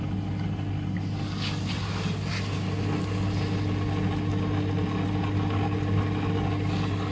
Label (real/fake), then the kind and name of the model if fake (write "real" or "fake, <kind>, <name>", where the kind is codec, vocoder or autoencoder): real